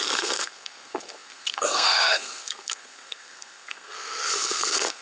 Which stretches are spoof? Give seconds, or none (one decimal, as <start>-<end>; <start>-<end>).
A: 0.0-5.0